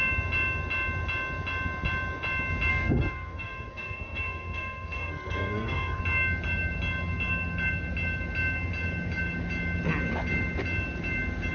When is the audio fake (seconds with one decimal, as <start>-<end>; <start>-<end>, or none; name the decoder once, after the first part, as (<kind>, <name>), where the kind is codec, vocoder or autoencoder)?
2.7-6.0 (codec, SNAC)

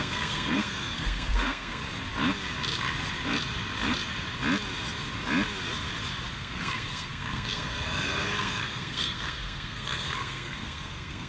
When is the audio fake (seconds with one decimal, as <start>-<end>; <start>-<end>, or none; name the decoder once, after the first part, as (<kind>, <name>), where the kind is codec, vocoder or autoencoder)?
0.0-1.8 (codec, SNAC); 6.3-11.3

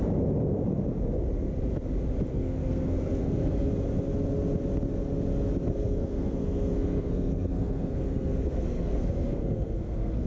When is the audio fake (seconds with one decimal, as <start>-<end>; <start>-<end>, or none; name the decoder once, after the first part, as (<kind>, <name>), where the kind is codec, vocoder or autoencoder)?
2.3-3.7 (codec, SNAC); 5.7-10.3

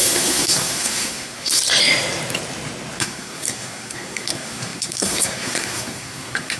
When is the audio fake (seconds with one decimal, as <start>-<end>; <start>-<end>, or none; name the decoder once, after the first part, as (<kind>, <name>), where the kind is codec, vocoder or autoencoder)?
0.0-1.6 (codec, SNAC); 3.0-6.6

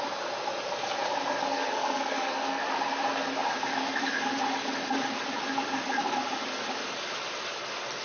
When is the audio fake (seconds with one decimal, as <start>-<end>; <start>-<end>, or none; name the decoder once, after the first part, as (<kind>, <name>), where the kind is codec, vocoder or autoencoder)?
1.4-2.6 (codec, SNAC)